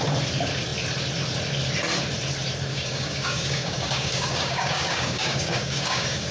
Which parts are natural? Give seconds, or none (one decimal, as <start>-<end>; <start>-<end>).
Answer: 0.0-2.7